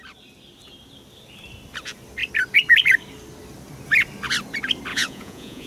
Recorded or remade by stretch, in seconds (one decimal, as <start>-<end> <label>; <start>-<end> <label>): 0.0-4.9 recorded; 4.9-5.7 remade